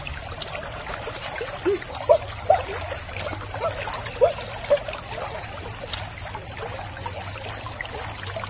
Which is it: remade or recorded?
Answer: recorded